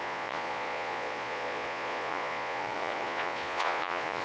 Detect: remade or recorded remade